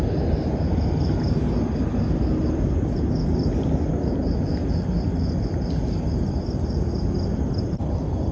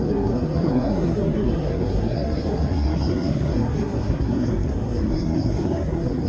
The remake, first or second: second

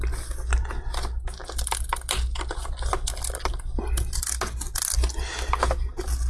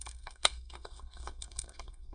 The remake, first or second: second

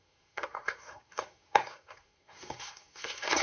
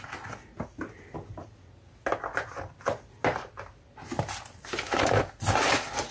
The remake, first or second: first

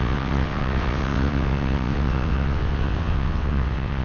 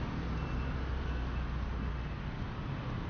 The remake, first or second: first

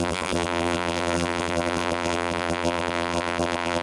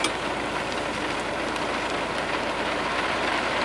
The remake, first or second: first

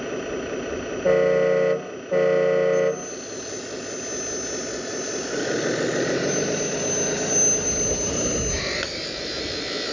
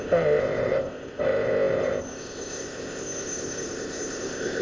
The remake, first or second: second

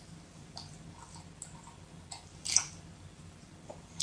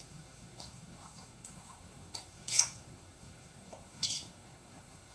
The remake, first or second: second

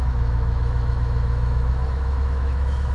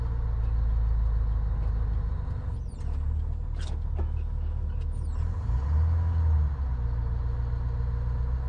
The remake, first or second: first